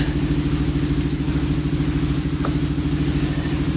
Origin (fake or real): real